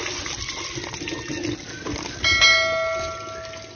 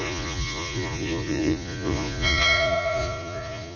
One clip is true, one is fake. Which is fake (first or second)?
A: second